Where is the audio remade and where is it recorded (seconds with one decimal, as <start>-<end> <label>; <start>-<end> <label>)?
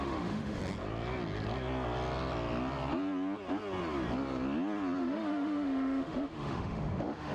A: 0.0-0.6 remade; 0.6-5.0 recorded; 5.0-7.3 remade